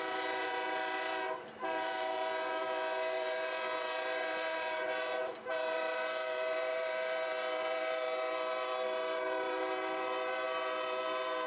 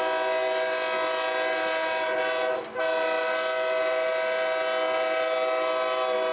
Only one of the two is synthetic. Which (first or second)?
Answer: first